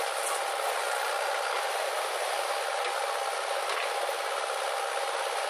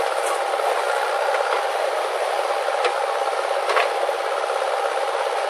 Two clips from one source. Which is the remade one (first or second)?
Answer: second